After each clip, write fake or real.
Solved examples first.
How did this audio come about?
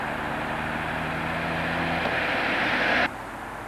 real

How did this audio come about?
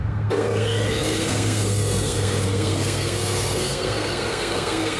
fake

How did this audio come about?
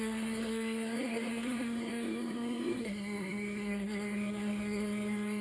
fake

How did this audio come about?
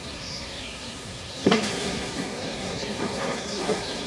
fake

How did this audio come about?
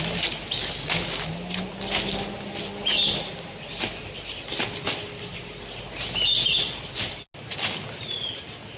real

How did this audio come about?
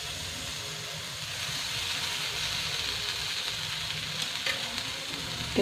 real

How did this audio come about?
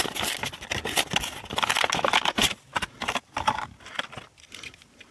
real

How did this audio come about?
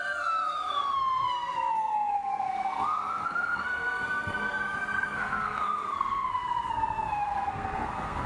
fake